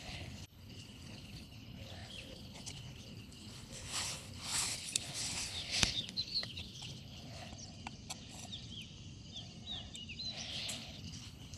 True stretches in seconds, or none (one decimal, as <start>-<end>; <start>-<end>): 7.5-10.5